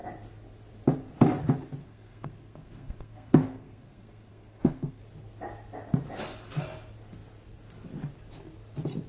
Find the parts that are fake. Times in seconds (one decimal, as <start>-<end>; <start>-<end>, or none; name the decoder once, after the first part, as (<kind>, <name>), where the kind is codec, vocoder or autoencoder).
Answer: 1.8-5.0 (codec, SNAC)

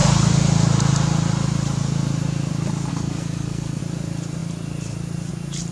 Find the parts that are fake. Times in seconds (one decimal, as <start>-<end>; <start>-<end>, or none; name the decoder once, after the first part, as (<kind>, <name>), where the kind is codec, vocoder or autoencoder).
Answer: 2.9-3.8 (codec, SNAC)

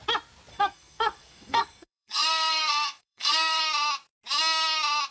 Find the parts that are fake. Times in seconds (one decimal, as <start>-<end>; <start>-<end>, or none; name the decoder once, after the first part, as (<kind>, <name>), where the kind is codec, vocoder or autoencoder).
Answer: 0.5-3.6 (codec, SNAC)

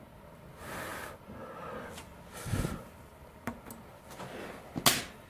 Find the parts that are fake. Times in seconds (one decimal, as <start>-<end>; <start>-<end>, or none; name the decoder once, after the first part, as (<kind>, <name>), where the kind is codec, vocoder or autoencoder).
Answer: none

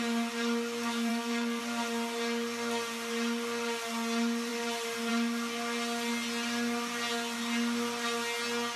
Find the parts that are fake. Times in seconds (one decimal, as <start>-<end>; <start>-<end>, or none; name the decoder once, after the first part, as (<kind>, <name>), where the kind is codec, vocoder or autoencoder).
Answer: 1.1-1.6 (codec, SNAC)

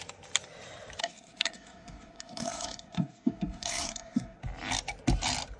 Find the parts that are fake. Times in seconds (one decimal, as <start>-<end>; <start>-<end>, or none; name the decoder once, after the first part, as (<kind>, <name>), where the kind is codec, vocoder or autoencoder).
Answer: 1.0-4.4 (codec, SNAC)